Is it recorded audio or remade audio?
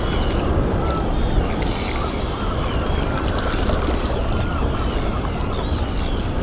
recorded